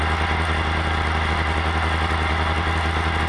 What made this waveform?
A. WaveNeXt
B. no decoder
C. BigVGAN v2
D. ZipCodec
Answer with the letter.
B